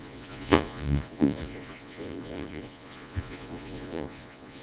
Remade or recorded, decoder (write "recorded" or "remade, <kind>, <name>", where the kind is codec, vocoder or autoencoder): remade, vocoder, Vocos